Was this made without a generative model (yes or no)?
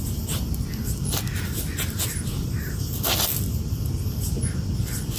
yes